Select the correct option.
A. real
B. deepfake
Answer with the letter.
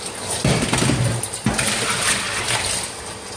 A